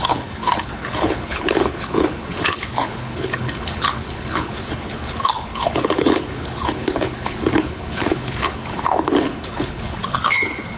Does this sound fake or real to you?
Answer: fake